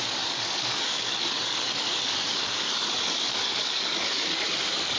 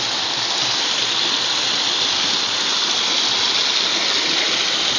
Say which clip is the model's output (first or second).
first